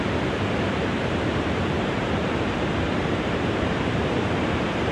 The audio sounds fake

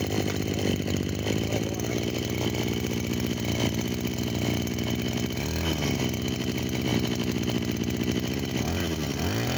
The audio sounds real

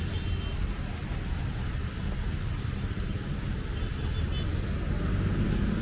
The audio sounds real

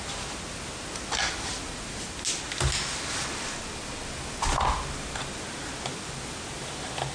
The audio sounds real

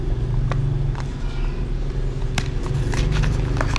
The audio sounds real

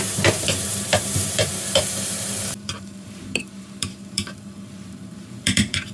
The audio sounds fake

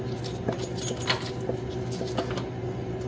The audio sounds real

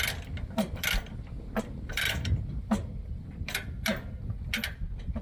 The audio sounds real